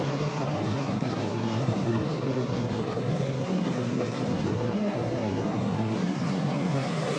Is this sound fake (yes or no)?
yes